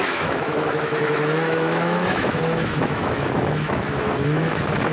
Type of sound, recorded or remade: remade